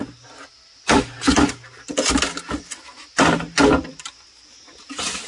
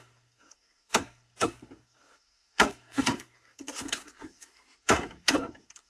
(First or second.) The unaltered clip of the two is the first